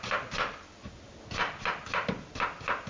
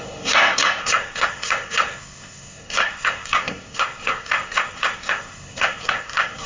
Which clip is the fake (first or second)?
second